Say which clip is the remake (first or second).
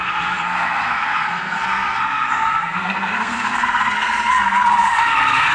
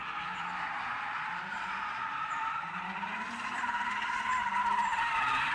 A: first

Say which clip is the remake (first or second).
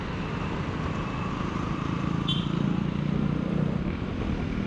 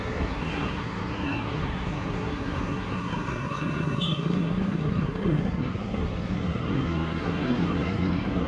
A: second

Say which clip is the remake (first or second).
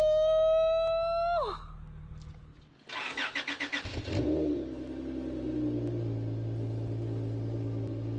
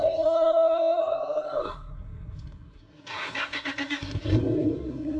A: second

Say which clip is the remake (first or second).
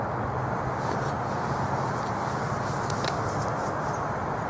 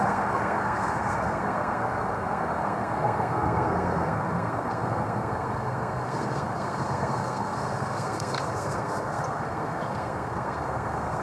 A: second